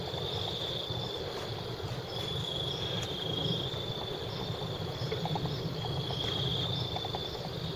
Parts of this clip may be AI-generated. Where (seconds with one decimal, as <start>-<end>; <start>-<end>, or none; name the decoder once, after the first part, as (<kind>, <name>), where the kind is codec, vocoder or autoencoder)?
none